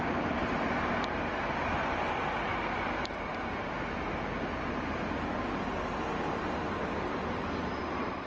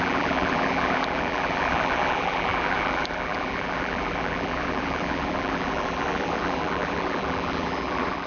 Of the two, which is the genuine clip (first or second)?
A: first